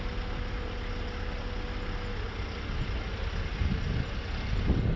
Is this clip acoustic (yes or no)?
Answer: yes